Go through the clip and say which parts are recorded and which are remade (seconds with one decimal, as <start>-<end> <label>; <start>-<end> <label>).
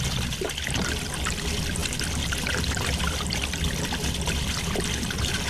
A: 0.0-5.5 recorded